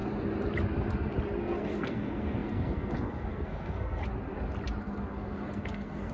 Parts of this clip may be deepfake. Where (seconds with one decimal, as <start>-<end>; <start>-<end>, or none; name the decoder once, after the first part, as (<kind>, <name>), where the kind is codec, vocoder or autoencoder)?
1.4-4.0 (codec, SNAC); 4.8-6.1